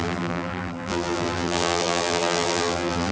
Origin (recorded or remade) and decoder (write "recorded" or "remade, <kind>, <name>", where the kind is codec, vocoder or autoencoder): remade, vocoder, BigVGAN v2